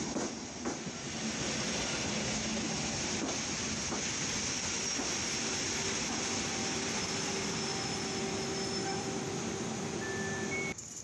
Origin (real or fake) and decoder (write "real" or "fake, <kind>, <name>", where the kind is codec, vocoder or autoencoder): real